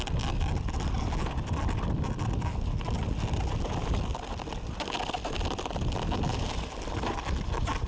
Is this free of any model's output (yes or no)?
yes